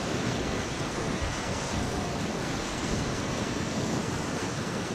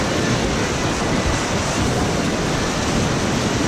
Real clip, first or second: second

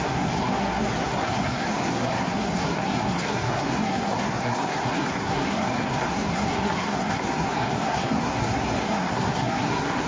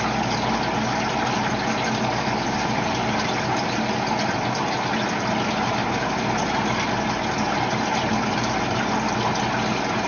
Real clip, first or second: second